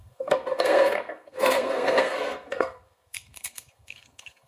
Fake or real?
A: fake